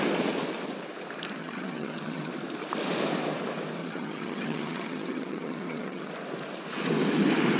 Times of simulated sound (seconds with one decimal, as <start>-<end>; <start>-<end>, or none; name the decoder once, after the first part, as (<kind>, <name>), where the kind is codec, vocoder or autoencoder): 1.4-2.3 (vocoder, HiFi-GAN); 3.8-6.1